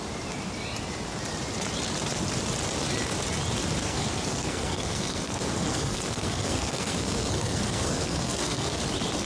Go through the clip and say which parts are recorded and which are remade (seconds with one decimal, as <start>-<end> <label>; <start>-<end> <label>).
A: 0.0-3.8 recorded; 3.8-8.8 remade; 8.8-9.3 recorded